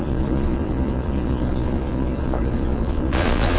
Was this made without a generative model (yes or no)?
no